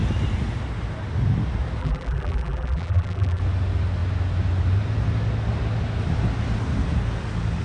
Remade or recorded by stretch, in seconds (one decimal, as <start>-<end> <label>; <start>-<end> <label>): 0.0-1.8 recorded; 1.8-3.4 remade; 3.4-7.6 recorded